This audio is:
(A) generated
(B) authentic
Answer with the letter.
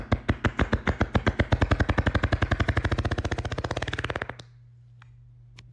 B